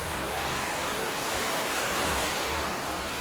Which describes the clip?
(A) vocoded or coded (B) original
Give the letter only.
A